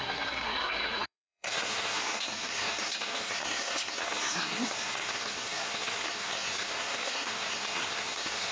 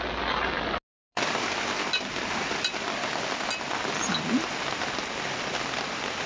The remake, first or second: first